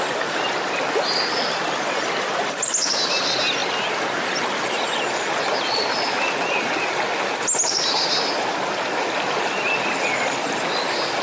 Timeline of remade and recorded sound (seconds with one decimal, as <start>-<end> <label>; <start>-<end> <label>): 0.0-11.2 recorded